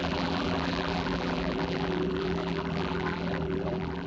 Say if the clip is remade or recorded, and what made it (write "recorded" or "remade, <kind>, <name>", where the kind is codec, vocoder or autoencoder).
remade, vocoder, BigVGAN v2